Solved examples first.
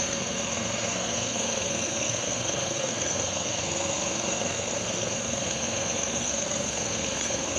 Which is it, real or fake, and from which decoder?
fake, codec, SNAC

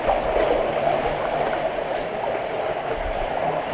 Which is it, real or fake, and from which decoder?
real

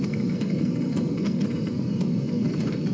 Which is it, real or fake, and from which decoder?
fake, codec, SNAC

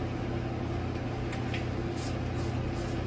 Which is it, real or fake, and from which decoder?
real